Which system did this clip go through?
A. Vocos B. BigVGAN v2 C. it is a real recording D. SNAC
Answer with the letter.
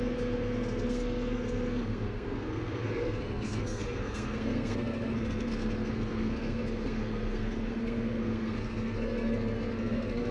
D